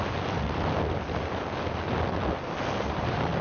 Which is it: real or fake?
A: real